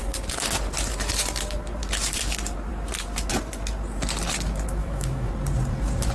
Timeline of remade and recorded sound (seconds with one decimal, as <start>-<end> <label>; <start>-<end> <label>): 0.0-4.8 recorded; 4.8-5.3 remade; 5.3-6.1 recorded